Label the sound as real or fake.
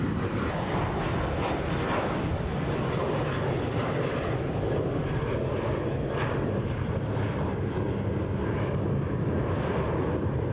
real